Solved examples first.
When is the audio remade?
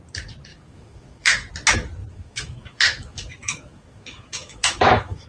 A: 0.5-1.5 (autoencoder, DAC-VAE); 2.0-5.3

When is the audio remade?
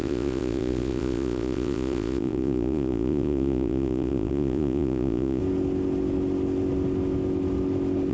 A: 0.0-5.4 (vocoder, Vocos)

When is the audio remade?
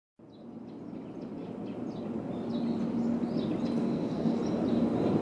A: 3.8-4.4 (codec, SNAC)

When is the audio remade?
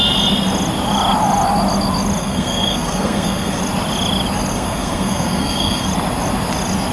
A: 2.2-3.6 (codec, SNAC); 4.5-5.9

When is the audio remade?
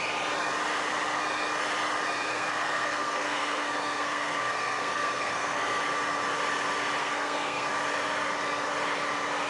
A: 2.3-5.8 (codec, SNAC); 7.0-7.7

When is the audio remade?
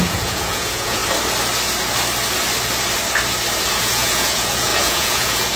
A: 0.0-1.0 (vocoder, Vocos); 3.7-5.6